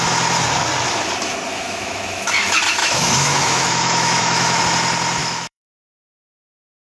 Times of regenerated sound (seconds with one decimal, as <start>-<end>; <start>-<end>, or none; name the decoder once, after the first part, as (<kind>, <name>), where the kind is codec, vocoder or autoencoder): 1.5-2.3 (autoencoder, DAC-VAE); 2.8-4.6; 5.2-6.1